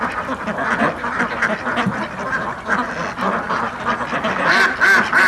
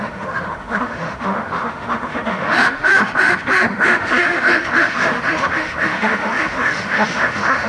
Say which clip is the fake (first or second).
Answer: second